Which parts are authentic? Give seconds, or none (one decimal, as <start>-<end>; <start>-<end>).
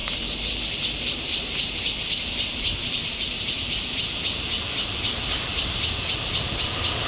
3.6-5.5; 6.1-7.1